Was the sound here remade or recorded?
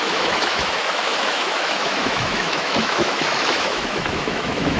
remade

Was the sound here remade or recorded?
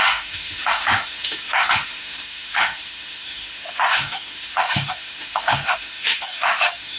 remade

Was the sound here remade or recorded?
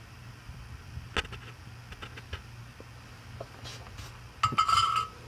recorded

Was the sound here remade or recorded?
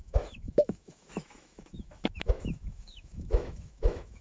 remade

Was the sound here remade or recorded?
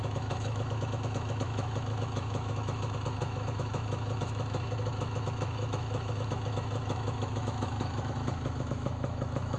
remade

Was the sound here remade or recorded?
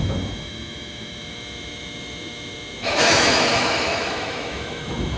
remade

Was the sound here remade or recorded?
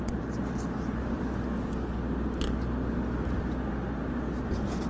recorded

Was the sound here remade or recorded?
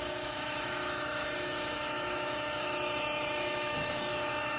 remade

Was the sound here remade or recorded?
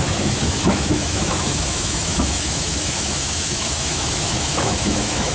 remade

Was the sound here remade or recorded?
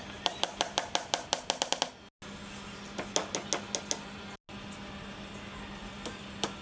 recorded